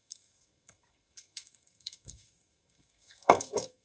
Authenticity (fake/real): fake